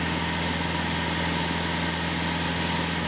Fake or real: real